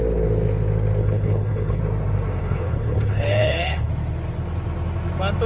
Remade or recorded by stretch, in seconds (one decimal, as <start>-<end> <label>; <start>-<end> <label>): 0.0-1.0 recorded; 1.0-1.8 remade; 1.8-2.4 recorded; 2.4-3.9 remade; 3.9-5.5 recorded